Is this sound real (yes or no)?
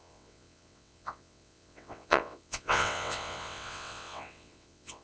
no